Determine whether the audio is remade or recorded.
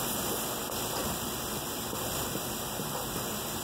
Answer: recorded